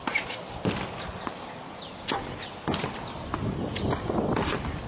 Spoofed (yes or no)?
no